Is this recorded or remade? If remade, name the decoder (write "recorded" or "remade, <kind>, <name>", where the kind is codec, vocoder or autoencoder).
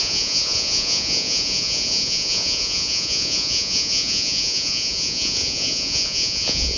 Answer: remade, vocoder, Vocos